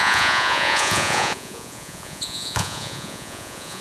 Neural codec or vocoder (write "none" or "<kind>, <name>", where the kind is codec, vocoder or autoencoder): vocoder, Vocos